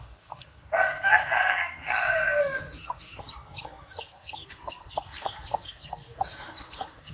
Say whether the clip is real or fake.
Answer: fake